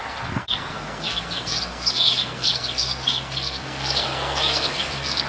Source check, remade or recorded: remade